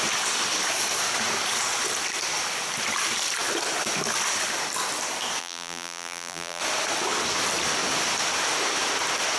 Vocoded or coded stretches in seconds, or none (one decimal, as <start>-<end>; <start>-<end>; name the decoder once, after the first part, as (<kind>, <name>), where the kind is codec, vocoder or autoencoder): 5.4-6.6 (vocoder, BigVGAN v2)